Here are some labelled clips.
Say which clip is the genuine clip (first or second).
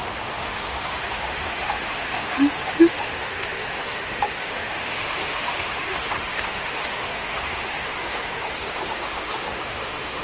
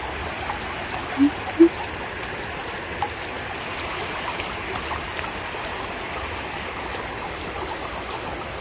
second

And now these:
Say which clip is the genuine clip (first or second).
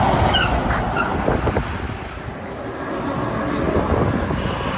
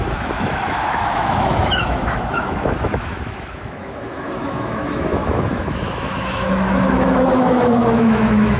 first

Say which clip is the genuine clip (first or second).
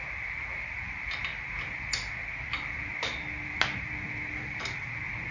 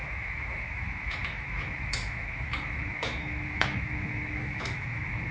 first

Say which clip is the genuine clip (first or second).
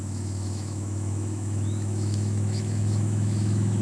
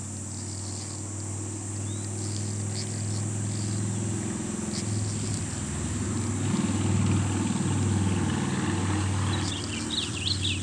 second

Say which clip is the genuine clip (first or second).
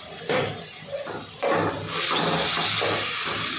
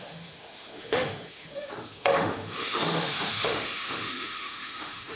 first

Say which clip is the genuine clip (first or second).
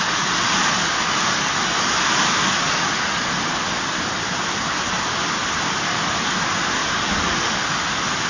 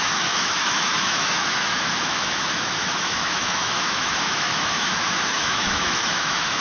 first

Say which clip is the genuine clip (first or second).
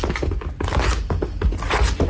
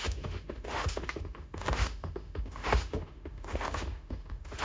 first